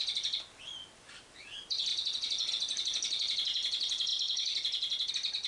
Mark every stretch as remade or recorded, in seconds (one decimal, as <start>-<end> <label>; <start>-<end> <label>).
0.0-5.5 recorded